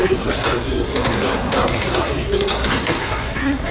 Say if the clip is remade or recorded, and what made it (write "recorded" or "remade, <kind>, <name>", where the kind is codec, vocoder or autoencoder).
remade, codec, SNAC